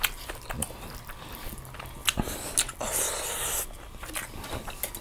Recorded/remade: recorded